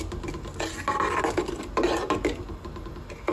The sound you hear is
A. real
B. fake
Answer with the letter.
A